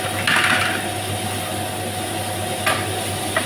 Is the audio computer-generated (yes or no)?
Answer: no